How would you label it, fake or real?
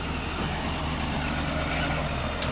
real